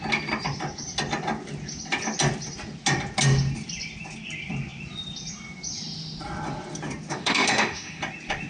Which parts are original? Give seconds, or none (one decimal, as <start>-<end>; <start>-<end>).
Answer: 0.0-7.1; 8.0-8.5

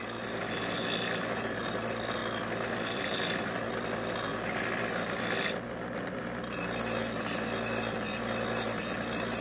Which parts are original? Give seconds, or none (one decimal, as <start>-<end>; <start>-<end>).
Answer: 0.0-9.4

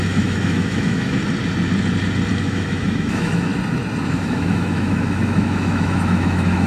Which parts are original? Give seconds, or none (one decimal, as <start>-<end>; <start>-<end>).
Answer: 1.2-2.3; 3.5-4.0

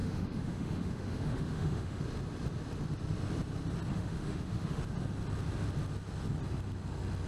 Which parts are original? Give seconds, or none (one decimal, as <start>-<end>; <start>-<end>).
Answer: 2.0-3.9; 4.8-7.3

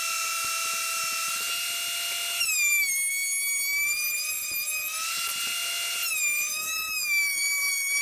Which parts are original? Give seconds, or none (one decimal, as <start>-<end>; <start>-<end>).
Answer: 0.0-6.5

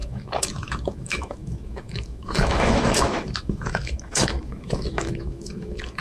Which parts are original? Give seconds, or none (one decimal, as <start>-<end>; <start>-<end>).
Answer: none

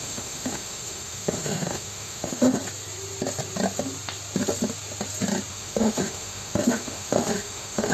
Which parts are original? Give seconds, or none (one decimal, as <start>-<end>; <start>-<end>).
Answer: 2.6-5.5

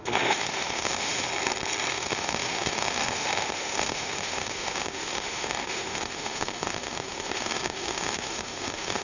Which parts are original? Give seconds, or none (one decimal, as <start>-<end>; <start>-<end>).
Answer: 1.3-1.9